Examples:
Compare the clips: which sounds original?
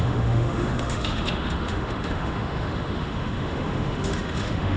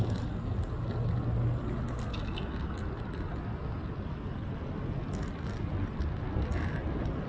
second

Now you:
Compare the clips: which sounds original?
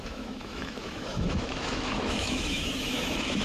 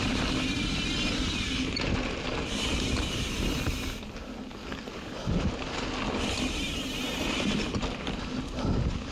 second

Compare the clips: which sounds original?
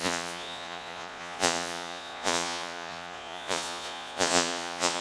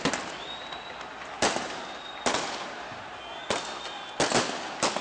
second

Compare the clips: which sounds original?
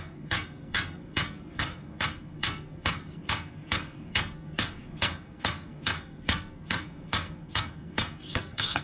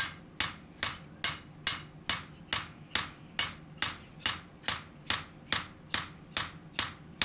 second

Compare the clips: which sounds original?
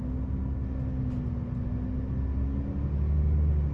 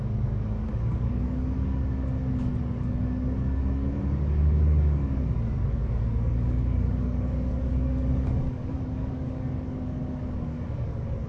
first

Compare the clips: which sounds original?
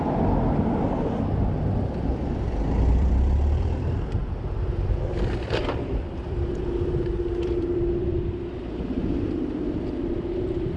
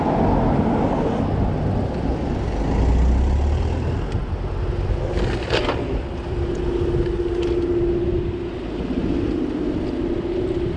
second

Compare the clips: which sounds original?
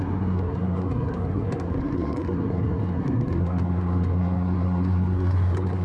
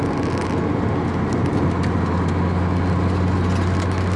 second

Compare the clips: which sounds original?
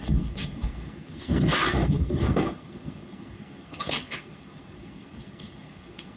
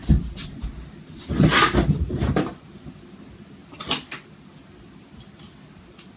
second